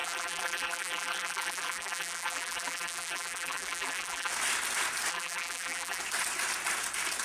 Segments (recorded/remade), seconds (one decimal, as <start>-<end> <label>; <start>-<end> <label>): 0.0-4.3 remade; 4.3-5.1 recorded; 5.1-6.0 remade; 6.0-7.2 recorded